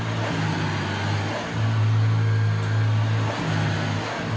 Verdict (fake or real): real